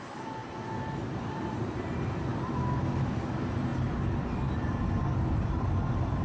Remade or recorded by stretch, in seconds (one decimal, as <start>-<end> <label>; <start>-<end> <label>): 0.0-0.4 remade; 0.4-1.2 recorded; 1.2-2.3 remade; 2.3-2.9 recorded; 2.9-6.2 remade